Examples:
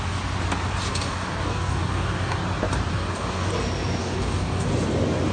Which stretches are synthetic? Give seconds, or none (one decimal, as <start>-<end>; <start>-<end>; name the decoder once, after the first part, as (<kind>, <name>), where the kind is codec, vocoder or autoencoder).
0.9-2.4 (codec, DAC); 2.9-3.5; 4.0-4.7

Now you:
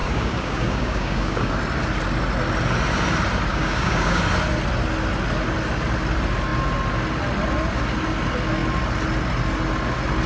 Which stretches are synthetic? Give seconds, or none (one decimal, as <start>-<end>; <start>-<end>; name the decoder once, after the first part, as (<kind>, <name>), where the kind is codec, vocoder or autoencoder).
0.0-1.5 (codec, DAC); 3.5-4.2

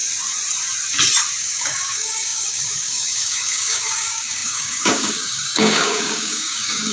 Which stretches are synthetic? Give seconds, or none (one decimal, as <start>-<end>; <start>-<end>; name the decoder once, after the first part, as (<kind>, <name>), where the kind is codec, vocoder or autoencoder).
1.4-6.9 (codec, DAC)

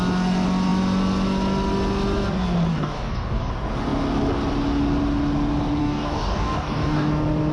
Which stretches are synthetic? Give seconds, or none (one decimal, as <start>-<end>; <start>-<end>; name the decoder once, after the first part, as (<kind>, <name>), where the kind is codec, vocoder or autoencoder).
2.7-3.5 (codec, DAC); 5.8-7.1

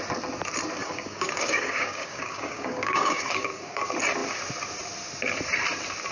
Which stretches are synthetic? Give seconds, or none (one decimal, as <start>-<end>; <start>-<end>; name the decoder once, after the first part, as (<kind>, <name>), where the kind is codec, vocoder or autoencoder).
0.8-3.8 (codec, DAC)